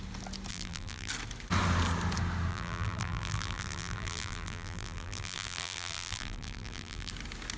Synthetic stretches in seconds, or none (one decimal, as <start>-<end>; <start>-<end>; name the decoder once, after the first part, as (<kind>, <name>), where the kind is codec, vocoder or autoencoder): 0.5-1.1 (vocoder, BigVGAN v2); 2.5-7.1